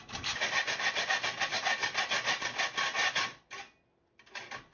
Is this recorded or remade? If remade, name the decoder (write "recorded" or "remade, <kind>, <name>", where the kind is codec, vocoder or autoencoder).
recorded